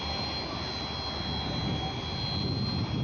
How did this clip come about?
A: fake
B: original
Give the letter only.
B